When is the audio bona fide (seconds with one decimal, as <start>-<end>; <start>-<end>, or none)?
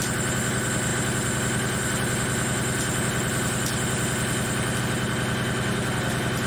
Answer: 0.0-6.5